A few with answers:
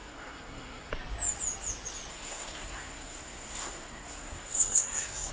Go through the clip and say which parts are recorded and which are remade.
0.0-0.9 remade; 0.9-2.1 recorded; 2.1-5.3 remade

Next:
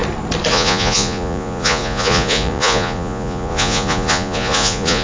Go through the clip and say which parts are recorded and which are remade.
0.0-0.5 recorded; 0.5-5.0 remade

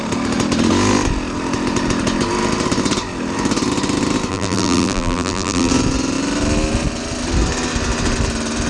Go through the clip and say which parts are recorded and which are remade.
0.0-4.3 recorded; 4.3-5.7 remade; 5.7-8.7 recorded